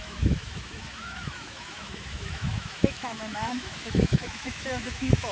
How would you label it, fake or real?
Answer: fake